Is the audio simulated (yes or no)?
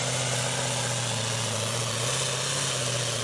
no